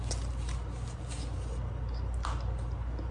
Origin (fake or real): real